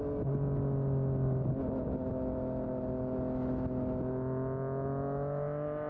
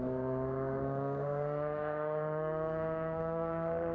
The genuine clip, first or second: first